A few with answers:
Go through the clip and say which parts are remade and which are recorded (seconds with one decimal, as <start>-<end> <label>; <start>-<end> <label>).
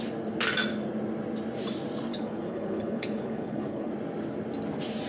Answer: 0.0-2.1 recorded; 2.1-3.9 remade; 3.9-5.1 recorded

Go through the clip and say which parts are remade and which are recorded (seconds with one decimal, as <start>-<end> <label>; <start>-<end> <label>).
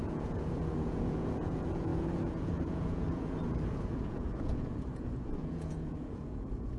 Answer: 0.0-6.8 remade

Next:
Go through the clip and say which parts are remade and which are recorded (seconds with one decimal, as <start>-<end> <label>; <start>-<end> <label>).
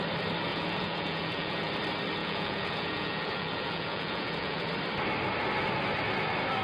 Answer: 0.0-0.5 recorded; 0.5-1.7 remade; 1.7-2.2 recorded; 2.2-4.7 remade; 4.7-6.6 recorded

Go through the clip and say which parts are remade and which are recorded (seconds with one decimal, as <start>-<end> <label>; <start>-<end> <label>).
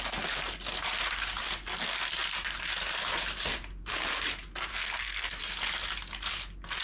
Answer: 0.0-4.7 recorded; 4.7-5.4 remade; 5.4-6.8 recorded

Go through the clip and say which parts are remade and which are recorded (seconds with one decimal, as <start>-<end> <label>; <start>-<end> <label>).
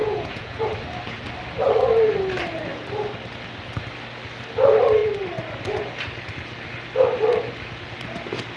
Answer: 0.0-0.6 remade; 0.6-8.6 recorded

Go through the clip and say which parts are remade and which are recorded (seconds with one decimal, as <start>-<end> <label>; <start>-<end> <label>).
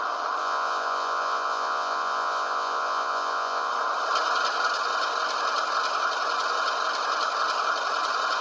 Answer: 0.0-0.4 recorded; 0.4-3.7 remade; 3.7-8.4 recorded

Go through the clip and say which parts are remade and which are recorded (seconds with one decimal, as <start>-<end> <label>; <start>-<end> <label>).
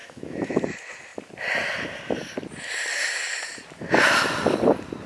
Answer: 0.0-0.6 remade; 0.6-5.1 recorded